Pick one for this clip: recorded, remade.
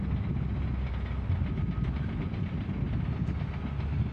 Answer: recorded